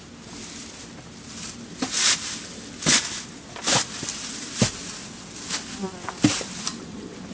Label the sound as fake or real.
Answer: real